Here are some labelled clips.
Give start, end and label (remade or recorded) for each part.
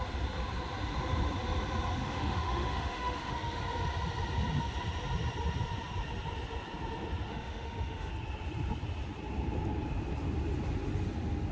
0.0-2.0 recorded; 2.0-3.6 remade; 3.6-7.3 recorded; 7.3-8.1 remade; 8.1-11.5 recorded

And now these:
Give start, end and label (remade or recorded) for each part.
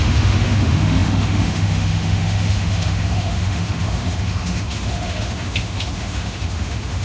0.0-7.0 remade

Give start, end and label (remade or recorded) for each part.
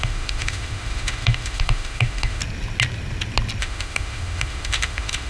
0.0-2.4 remade; 2.4-3.6 recorded; 3.6-5.3 remade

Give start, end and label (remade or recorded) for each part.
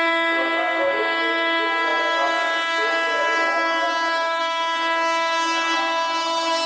0.0-6.7 remade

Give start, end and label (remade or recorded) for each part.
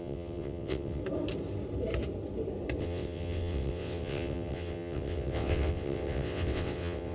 0.0-1.0 remade; 1.0-2.8 recorded; 2.8-7.1 remade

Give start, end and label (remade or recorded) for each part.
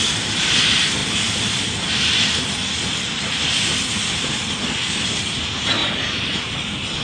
0.0-7.0 recorded